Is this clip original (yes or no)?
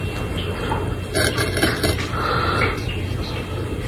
yes